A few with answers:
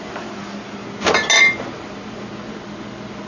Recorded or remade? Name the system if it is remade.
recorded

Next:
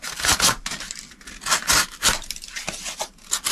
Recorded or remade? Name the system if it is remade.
recorded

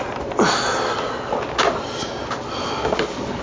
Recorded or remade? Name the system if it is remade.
recorded